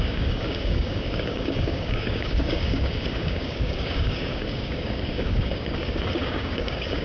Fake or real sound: fake